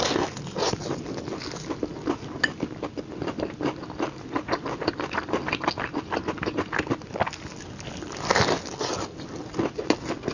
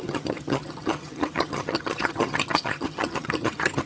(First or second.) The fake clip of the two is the second